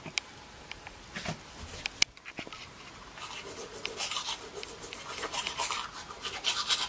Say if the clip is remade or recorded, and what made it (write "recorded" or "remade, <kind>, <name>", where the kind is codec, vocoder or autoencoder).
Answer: recorded